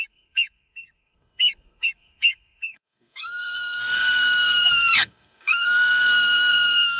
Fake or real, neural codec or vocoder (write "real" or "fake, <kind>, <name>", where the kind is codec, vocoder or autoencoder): fake, codec, SNAC